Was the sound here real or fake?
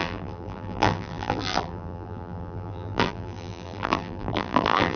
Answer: fake